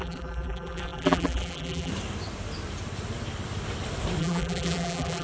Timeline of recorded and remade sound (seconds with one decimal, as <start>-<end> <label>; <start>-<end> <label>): 0.0-1.9 remade; 1.9-4.2 recorded; 4.2-5.2 remade